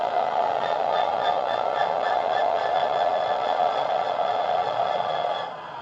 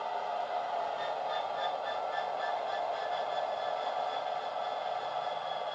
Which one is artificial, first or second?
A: first